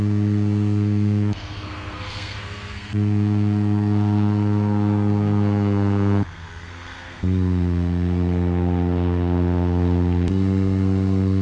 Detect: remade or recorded remade